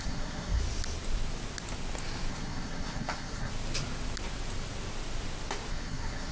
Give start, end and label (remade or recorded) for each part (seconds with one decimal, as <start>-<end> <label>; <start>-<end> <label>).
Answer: 0.0-0.6 remade; 0.6-2.3 recorded; 2.3-3.5 remade; 3.5-5.7 recorded; 5.7-6.3 remade